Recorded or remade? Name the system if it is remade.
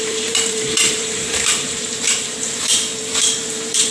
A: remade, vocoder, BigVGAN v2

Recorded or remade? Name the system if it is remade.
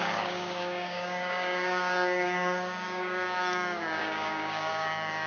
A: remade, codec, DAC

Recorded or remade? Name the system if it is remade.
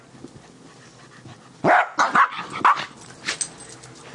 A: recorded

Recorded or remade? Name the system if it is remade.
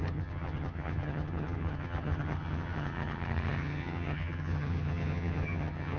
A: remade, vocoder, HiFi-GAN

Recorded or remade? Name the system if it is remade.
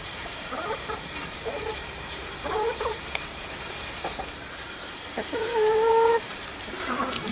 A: remade, vocoder, BigVGAN v2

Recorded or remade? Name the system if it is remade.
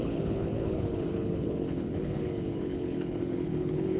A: remade, codec, HILCodec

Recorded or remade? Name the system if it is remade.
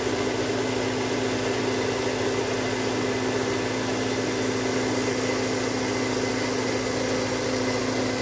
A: recorded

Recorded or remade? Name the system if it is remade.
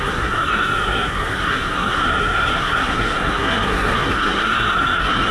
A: remade, codec, SNAC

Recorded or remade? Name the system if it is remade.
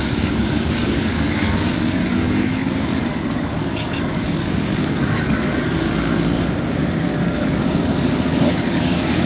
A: remade, codec, DAC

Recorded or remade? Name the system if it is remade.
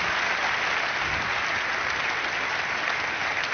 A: recorded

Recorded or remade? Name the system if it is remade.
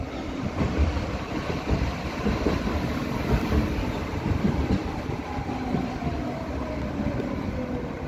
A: recorded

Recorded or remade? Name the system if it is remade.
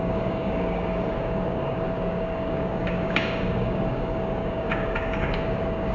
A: remade, codec, DAC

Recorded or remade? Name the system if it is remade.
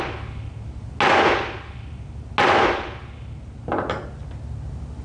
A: recorded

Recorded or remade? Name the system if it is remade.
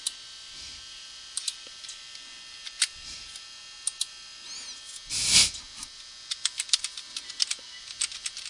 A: recorded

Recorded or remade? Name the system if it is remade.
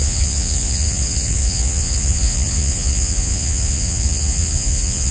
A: remade, vocoder, Vocos